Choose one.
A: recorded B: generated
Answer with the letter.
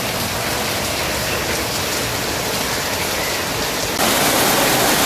A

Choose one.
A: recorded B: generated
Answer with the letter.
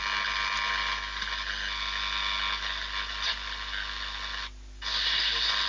A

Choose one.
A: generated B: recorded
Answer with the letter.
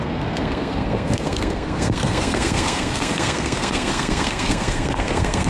A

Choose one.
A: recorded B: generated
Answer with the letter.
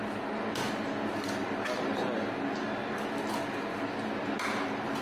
A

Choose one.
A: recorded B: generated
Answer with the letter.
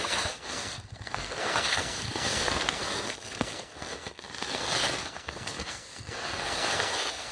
B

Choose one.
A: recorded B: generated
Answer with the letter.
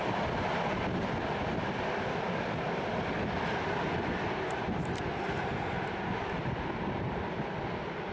A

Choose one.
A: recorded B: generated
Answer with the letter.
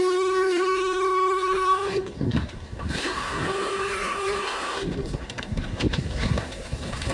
B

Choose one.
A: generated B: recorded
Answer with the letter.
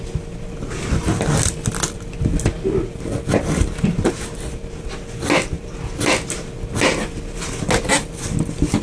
B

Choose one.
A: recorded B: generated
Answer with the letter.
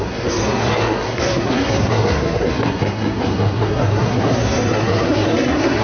B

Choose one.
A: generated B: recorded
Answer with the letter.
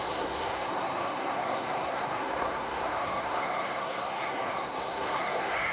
A